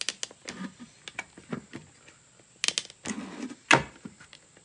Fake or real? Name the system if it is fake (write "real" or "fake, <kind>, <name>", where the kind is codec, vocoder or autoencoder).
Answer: real